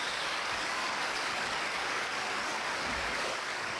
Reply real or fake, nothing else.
fake